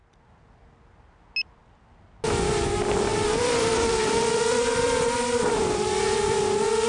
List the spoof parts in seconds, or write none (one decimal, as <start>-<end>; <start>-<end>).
3.1-6.4